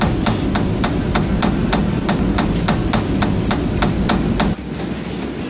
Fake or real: real